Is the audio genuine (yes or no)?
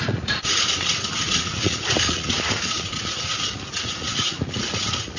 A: no